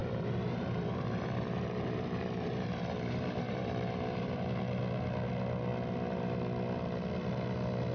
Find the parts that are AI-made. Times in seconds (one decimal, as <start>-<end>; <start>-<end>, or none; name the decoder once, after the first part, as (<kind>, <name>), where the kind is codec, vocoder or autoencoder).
0.0-4.6 (vocoder, BigVGAN v2)